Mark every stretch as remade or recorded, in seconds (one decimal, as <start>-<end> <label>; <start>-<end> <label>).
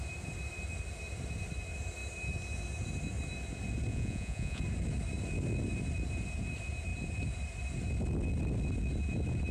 0.0-3.9 recorded; 3.9-4.6 remade; 4.6-9.5 recorded